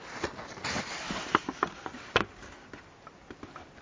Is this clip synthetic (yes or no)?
no